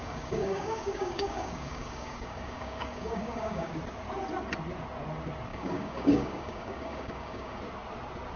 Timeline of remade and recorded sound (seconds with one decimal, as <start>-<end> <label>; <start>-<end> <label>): 0.0-3.7 remade; 3.7-5.5 recorded; 5.5-7.6 remade; 7.6-8.4 recorded